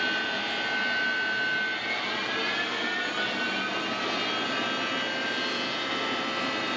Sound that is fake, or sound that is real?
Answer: real